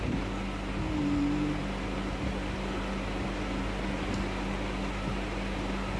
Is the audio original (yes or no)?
yes